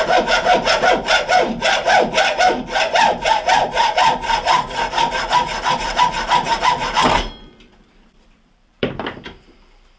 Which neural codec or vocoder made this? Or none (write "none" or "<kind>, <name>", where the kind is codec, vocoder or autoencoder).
vocoder, BigVGAN v2